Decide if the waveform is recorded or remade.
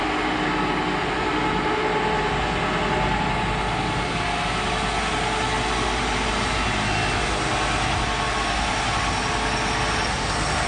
recorded